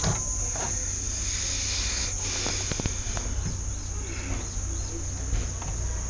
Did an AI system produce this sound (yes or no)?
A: no